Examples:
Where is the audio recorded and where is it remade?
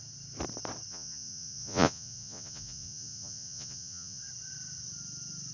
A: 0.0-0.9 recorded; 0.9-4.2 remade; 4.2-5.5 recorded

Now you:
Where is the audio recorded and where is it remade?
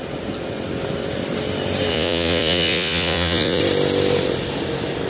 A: 0.0-1.9 recorded; 1.9-3.6 remade; 3.6-5.1 recorded